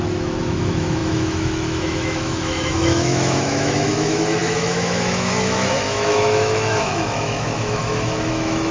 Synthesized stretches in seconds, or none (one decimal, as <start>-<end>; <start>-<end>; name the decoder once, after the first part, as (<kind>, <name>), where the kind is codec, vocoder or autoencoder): 0.0-8.7 (autoencoder, DAC-VAE)